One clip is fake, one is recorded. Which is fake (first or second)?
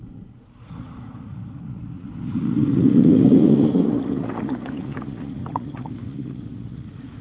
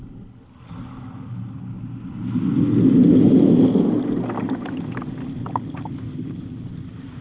first